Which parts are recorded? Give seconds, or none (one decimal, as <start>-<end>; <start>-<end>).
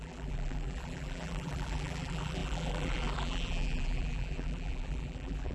none